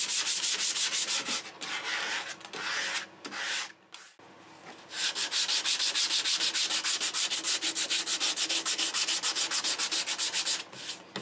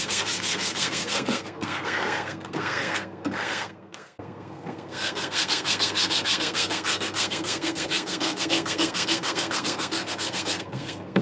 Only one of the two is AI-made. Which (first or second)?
second